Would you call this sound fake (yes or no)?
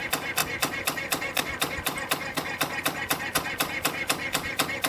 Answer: no